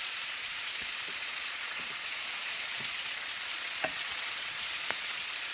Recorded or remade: remade